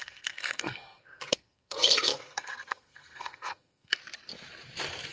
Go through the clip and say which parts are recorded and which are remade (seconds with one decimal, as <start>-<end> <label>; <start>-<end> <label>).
0.0-4.0 remade; 4.0-5.1 recorded